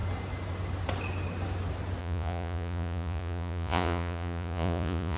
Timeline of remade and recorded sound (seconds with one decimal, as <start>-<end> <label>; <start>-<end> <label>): 0.0-2.0 recorded; 2.0-5.2 remade